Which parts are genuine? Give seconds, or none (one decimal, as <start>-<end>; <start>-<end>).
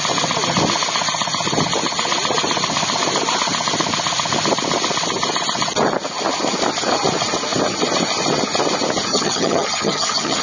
0.0-9.1